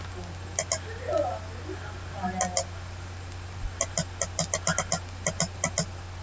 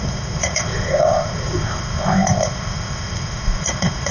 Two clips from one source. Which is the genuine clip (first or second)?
first